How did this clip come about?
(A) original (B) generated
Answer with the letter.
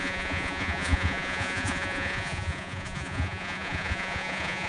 B